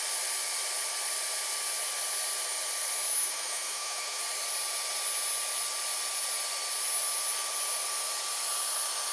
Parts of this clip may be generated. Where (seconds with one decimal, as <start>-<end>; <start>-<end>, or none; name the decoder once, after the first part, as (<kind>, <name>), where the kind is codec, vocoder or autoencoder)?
3.1-4.2 (autoencoder, DAC-VAE)